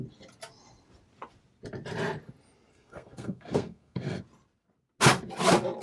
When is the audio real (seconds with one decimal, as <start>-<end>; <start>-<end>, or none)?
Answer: 0.0-2.7; 4.2-5.8

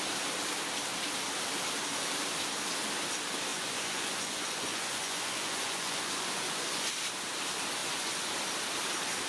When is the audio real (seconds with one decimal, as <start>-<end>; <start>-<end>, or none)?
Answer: 0.0-3.5; 6.9-7.8; 8.3-9.3

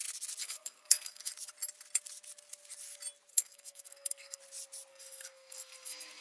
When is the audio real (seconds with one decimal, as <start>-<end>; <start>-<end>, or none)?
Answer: 0.0-0.4; 1.3-3.3; 4.4-4.9